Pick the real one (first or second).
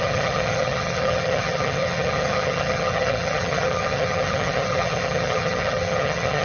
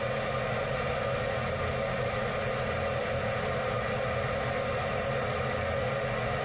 second